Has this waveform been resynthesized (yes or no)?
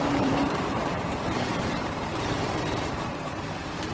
yes